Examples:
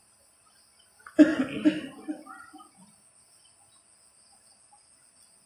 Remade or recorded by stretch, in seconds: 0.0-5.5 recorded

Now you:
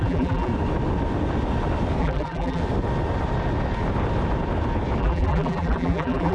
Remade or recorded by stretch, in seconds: 0.0-0.5 remade; 0.5-2.0 recorded; 2.0-2.6 remade; 2.6-5.0 recorded; 5.0-6.3 remade

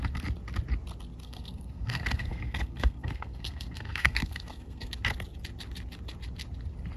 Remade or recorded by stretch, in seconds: 0.0-1.2 recorded; 1.2-4.9 remade; 4.9-7.0 recorded

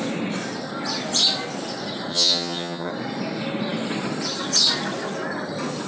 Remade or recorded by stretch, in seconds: 0.0-2.1 recorded; 2.1-2.9 remade; 2.9-5.9 recorded

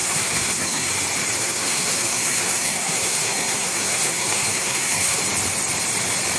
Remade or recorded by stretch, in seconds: 0.0-0.9 remade; 0.9-1.4 recorded; 1.4-5.2 remade; 5.2-6.4 recorded

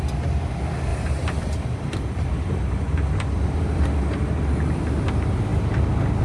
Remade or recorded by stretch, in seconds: 0.0-0.9 recorded; 0.9-4.3 remade; 4.3-6.2 recorded

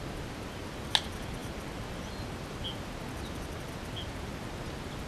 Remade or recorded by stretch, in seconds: 0.0-5.1 recorded